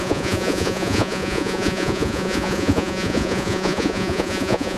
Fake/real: fake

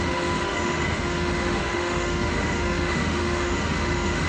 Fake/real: fake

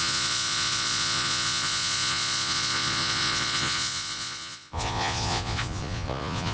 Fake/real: fake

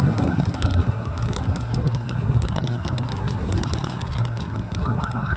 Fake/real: fake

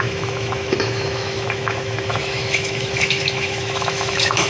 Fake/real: fake